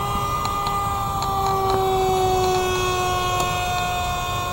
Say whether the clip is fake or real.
real